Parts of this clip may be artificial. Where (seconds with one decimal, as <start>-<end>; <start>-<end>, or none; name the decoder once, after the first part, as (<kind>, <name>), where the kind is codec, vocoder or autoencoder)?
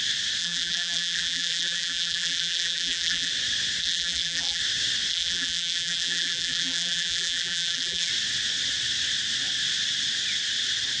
0.4-3.3 (vocoder, BigVGAN v2); 3.8-4.6; 5.1-8.1